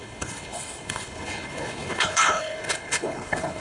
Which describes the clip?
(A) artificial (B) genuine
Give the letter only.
A